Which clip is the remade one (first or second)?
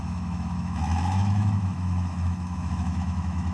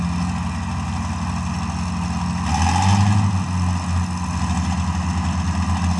first